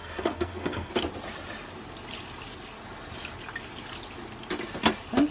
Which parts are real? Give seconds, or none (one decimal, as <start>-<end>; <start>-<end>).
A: 0.9-5.3